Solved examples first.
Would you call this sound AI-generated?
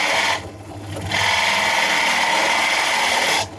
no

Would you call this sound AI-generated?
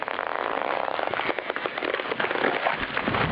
no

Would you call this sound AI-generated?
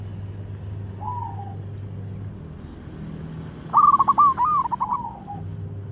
no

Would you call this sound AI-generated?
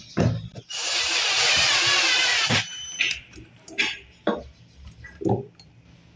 yes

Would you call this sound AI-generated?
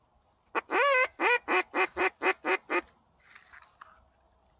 no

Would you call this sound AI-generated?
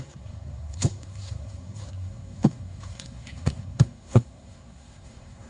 yes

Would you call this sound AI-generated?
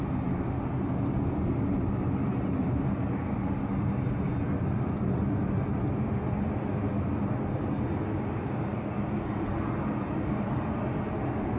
no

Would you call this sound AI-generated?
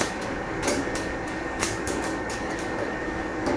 yes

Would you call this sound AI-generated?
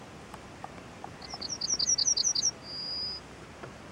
no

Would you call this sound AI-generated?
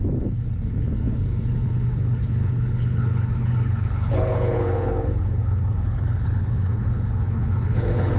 yes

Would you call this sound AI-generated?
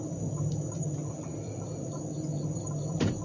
no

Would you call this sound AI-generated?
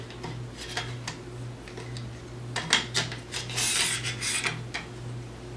no